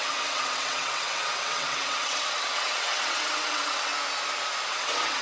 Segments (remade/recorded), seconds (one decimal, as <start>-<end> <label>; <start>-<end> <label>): 0.0-3.9 remade; 3.9-4.7 recorded; 4.7-5.2 remade